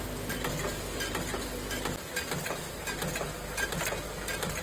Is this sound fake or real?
real